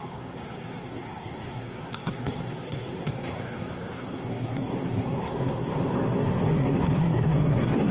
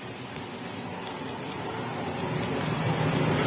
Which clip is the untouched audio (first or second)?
second